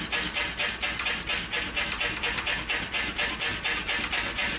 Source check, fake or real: real